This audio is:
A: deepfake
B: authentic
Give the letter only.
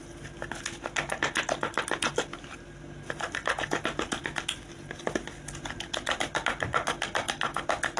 B